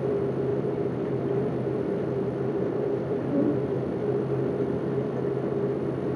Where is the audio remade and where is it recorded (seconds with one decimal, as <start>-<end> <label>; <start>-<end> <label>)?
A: 0.0-0.5 recorded; 0.5-4.2 remade; 4.2-6.2 recorded